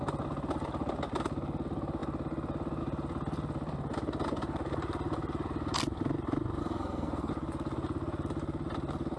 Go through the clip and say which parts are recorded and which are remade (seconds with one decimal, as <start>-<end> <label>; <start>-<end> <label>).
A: 0.0-6.6 recorded; 6.6-7.3 remade; 7.3-9.2 recorded